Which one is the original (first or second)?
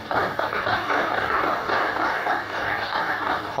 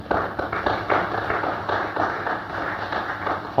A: second